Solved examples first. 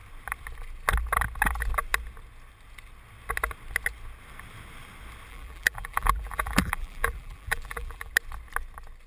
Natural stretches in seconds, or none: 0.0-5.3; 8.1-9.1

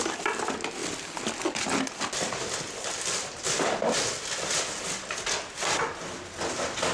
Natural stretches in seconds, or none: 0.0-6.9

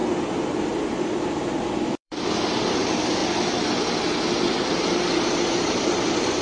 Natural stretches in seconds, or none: 0.0-1.0; 3.2-4.5

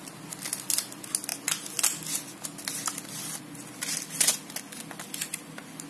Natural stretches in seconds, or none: 0.0-5.9